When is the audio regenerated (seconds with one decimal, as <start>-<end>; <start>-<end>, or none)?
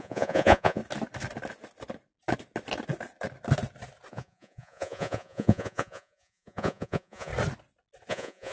0.0-0.8; 4.1-7.3; 8.1-8.5